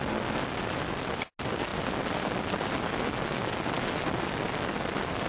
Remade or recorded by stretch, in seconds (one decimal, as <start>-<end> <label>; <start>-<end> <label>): 0.0-5.3 recorded